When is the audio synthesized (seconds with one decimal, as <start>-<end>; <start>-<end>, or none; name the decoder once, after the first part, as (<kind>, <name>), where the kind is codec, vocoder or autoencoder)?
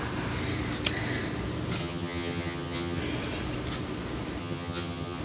1.8-3.0 (vocoder, HiFi-GAN); 4.4-5.2